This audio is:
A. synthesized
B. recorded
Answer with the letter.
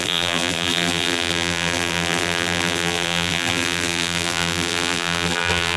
A